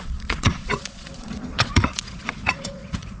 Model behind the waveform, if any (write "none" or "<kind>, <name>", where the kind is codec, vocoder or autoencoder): vocoder, Vocos